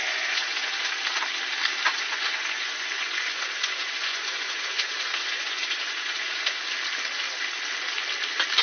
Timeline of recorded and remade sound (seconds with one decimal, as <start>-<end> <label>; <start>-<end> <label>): 0.0-0.9 remade; 0.9-1.9 recorded; 1.9-6.6 remade; 6.6-8.6 recorded